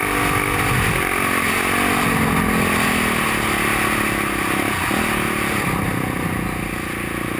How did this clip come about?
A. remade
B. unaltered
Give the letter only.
B